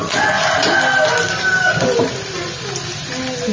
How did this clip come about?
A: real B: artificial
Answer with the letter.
A